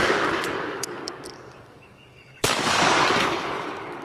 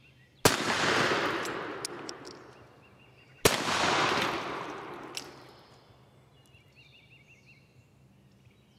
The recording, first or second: second